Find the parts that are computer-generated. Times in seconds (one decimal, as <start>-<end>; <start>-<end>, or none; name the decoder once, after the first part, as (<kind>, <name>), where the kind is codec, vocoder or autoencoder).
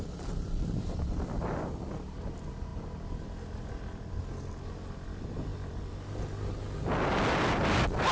none